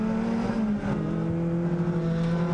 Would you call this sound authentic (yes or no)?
yes